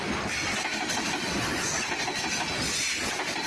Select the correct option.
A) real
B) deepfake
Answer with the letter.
A